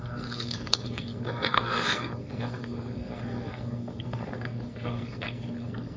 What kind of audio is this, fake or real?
fake